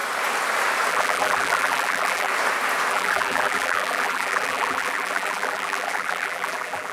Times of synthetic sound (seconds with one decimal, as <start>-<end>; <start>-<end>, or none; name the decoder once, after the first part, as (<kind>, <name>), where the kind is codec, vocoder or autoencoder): 0.9-2.3 (vocoder, BigVGAN v2); 2.9-6.9